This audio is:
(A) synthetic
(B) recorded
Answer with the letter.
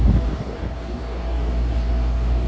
A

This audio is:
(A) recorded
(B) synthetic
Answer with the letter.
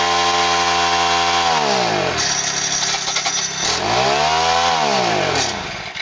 A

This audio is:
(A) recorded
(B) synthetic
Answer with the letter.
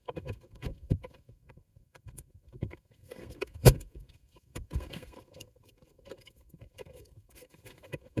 B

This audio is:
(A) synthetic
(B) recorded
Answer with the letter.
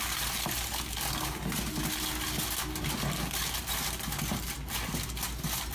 B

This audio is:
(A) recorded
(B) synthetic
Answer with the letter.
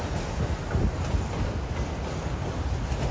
A